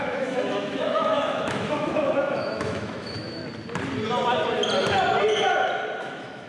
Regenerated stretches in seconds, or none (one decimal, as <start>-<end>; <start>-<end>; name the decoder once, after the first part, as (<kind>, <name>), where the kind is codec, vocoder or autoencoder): 0.0-3.4 (autoencoder, DAC-VAE); 6.0-6.5